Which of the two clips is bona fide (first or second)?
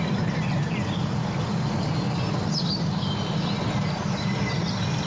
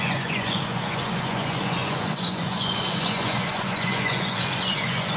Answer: first